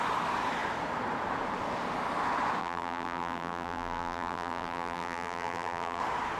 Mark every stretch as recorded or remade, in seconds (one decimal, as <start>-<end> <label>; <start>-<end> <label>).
0.0-2.6 recorded; 2.6-6.0 remade; 6.0-6.4 recorded